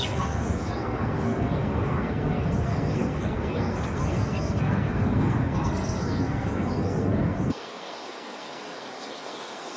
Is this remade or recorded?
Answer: remade